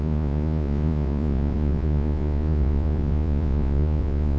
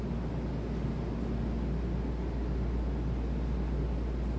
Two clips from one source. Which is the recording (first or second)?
second